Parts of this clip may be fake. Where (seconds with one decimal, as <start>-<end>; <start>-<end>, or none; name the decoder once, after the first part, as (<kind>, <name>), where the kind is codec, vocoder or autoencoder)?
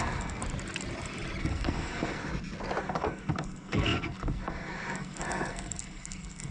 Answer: 0.0-0.4 (codec, SNAC); 1.4-2.3; 2.8-6.5